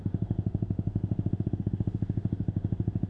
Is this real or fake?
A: fake